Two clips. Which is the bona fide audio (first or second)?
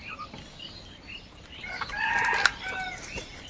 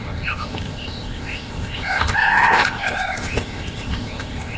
first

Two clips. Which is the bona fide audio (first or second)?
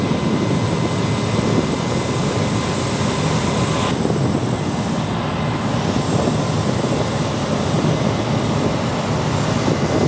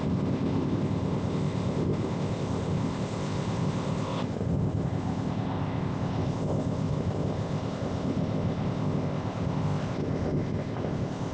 first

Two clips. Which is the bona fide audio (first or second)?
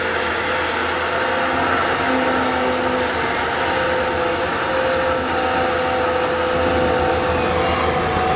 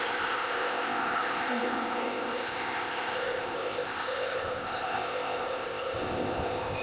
first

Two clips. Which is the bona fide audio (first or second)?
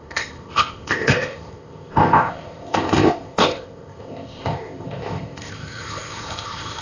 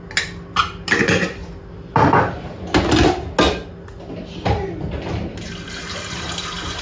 second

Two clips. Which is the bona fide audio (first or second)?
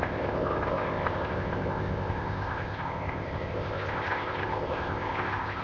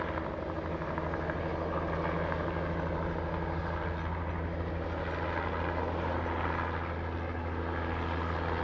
second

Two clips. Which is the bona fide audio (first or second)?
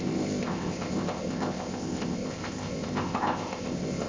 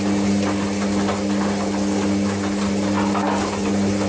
second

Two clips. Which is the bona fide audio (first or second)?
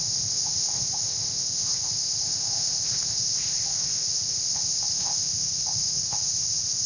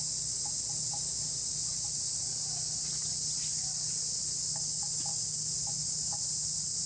second